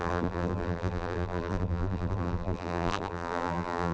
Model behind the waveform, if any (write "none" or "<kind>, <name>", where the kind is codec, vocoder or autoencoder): vocoder, BigVGAN v2